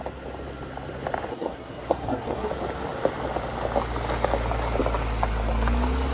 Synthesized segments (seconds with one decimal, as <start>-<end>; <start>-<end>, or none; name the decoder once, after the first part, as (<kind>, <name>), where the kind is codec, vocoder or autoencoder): 1.3-2.5 (codec, SNAC)